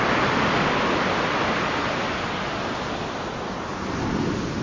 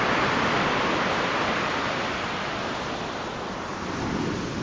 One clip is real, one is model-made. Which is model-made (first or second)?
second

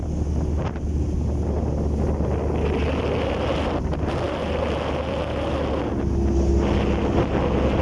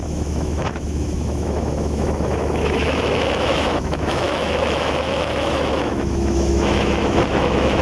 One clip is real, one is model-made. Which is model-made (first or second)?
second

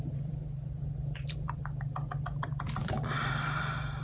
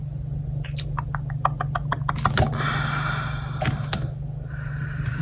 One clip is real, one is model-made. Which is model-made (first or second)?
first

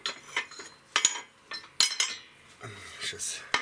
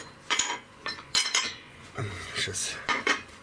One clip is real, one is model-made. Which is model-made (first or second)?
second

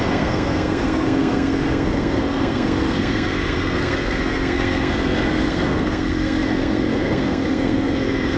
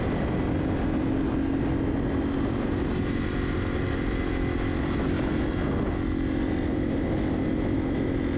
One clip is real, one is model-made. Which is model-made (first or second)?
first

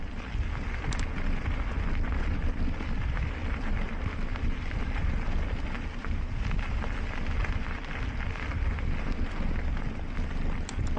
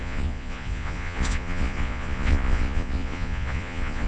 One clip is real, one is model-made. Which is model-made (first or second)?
second